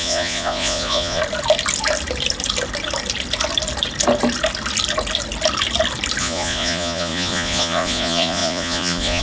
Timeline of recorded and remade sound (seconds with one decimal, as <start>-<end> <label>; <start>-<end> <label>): 0.0-1.2 remade; 1.2-6.2 recorded; 6.2-9.2 remade